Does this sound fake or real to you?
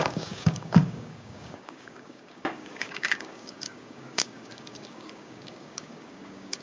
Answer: fake